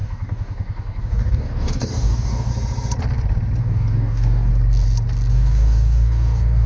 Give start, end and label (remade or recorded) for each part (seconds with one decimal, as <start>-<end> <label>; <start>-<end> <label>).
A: 0.0-2.5 remade; 2.5-3.6 recorded; 3.6-4.5 remade; 4.5-5.3 recorded; 5.3-6.7 remade